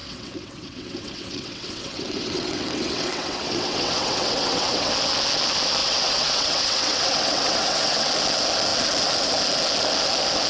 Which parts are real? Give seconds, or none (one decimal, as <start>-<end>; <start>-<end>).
4.9-5.8; 8.1-10.5